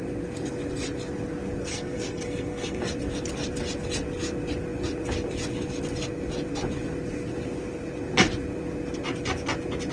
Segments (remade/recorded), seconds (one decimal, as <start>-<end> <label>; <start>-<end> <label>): 0.0-1.7 recorded; 1.7-2.8 remade; 2.8-9.9 recorded